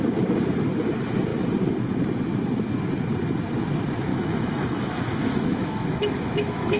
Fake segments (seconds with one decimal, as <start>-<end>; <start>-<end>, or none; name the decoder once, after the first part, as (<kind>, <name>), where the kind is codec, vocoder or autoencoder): 4.1-6.8 (autoencoder, DAC-VAE)